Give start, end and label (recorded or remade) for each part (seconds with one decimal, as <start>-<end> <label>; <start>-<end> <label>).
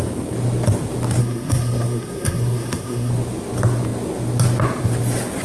0.0-1.2 recorded; 1.2-3.1 remade; 3.1-5.4 recorded